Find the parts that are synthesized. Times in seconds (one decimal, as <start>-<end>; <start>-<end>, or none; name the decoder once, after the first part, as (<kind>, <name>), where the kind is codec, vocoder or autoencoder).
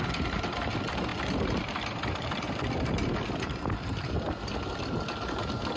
none